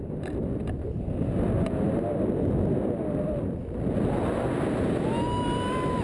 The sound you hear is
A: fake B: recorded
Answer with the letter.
B